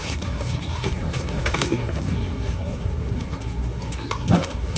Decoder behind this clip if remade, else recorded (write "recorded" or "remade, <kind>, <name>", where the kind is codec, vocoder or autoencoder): remade, codec, SNAC